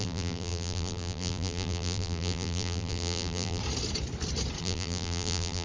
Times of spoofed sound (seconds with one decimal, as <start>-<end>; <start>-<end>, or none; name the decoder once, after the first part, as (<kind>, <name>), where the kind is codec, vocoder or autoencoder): 0.0-3.6 (vocoder, BigVGAN v2); 4.6-5.6